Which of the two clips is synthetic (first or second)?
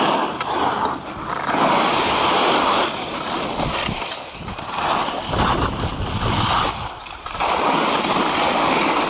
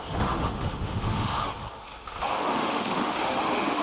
second